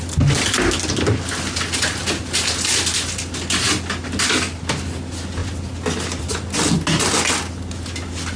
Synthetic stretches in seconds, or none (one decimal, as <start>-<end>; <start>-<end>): none